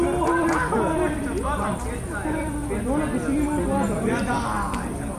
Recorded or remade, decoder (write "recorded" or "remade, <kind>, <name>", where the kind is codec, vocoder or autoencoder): recorded